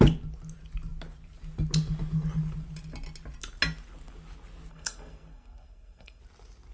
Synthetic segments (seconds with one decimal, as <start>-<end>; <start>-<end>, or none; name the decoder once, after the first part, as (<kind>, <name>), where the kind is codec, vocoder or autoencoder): 4.7-6.2 (codec, SNAC)